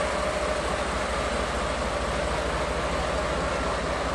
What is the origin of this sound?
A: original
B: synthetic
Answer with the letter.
A